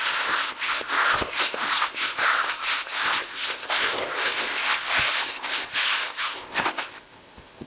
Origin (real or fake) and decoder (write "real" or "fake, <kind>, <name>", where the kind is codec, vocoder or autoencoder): fake, codec, ZipCodec